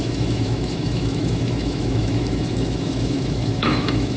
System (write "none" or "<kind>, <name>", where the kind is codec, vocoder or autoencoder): autoencoder, DAC-VAE